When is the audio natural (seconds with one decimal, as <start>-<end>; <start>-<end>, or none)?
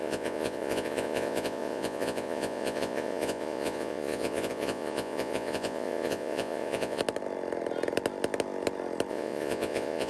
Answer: 7.0-9.1